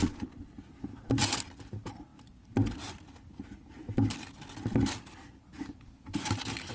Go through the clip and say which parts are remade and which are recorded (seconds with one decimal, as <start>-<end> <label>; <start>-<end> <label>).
0.0-0.5 remade; 0.5-6.7 recorded